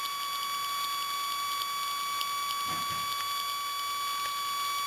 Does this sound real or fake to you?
real